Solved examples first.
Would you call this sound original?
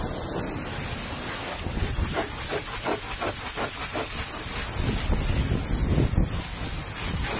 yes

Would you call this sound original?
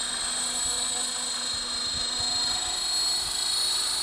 yes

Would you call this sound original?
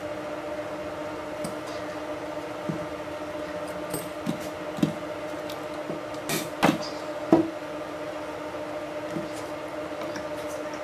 yes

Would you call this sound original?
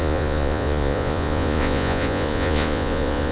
no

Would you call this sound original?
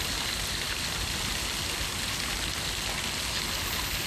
yes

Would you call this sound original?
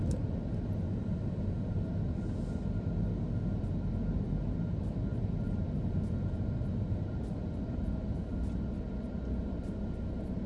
yes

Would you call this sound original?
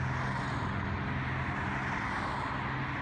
yes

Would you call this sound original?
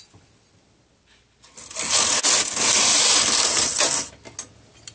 yes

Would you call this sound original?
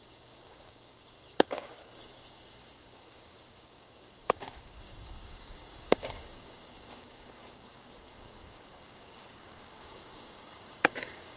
no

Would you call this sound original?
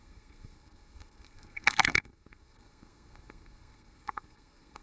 no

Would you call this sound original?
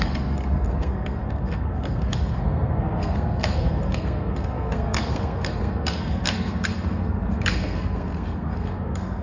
no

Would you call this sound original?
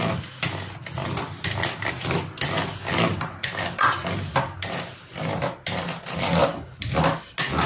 yes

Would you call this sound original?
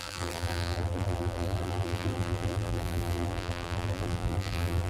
no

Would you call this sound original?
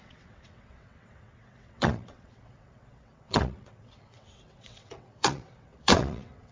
no